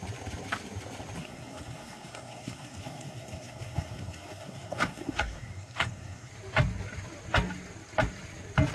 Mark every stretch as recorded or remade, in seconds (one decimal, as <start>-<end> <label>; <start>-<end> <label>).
0.0-1.2 recorded; 1.2-6.3 remade; 6.3-8.7 recorded